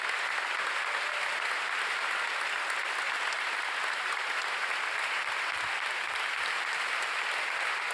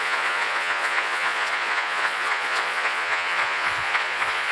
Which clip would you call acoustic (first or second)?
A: first